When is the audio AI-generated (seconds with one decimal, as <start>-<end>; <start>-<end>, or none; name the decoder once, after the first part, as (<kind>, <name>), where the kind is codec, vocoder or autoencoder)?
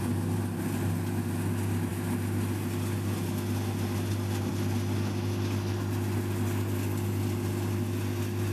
none